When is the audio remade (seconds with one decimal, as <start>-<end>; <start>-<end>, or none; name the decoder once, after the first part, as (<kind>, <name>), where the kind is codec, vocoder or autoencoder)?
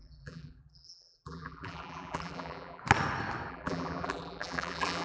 0.0-2.8 (vocoder, BigVGAN v2); 3.5-5.0